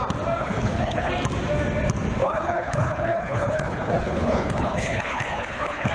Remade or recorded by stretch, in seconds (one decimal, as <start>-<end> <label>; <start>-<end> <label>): 0.0-0.4 recorded; 0.4-1.1 remade; 1.1-2.2 recorded; 2.2-5.9 remade